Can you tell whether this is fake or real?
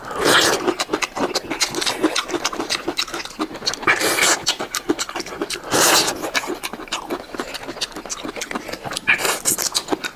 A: real